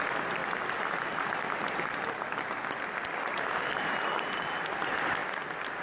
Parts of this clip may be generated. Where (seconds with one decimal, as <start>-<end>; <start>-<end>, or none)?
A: none